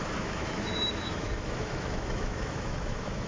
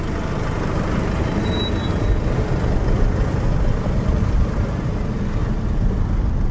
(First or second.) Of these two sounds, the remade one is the first